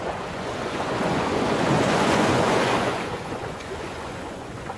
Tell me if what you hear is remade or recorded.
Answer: remade